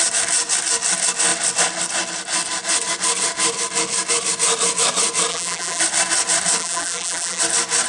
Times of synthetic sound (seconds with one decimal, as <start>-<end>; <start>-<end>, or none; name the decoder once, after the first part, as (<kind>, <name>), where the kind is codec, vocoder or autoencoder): 5.3-5.8 (vocoder, BigVGAN v2); 6.6-7.4